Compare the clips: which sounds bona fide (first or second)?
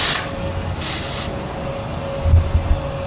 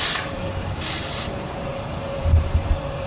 first